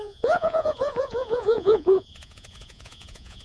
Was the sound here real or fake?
fake